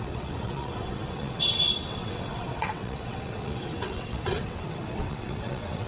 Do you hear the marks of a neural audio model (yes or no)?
yes